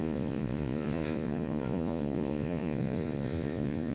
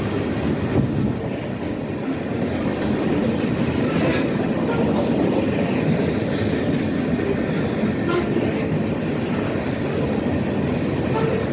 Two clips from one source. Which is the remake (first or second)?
first